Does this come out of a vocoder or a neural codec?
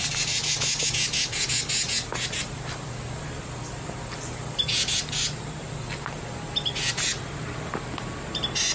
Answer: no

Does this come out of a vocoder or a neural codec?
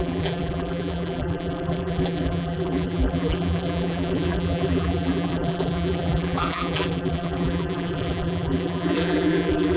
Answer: yes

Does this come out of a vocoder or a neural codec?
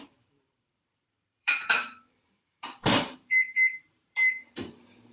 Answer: yes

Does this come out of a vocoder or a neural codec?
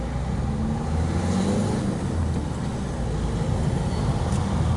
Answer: no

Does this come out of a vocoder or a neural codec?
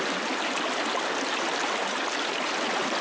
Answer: no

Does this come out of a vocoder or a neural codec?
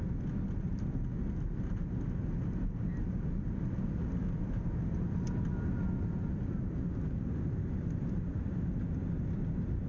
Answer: no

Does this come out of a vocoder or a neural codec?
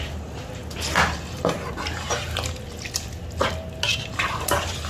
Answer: no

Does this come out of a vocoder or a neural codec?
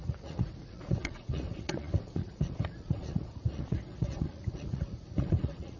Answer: yes